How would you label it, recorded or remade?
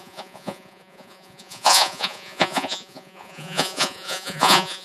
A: remade